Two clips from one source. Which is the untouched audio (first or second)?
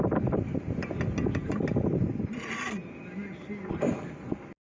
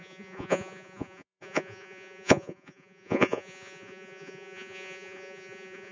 first